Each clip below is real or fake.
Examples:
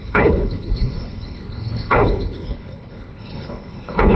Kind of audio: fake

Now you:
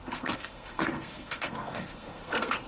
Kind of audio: fake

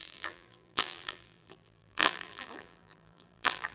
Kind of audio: fake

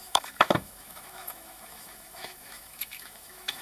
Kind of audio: fake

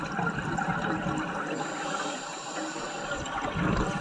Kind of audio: real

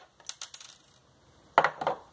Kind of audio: real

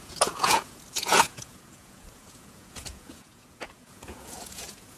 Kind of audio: fake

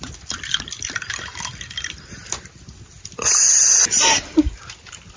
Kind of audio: real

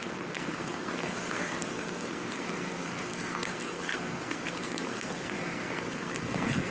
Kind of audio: fake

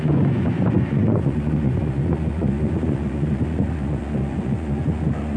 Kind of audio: fake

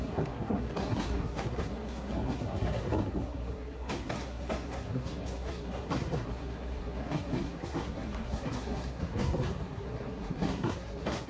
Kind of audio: fake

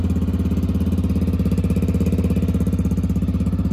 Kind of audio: real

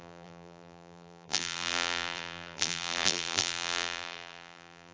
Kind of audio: fake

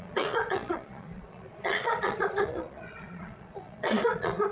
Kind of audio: fake